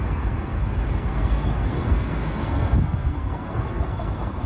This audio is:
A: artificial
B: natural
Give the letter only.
A